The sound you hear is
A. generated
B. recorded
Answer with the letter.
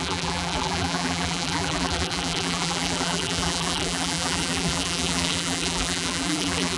A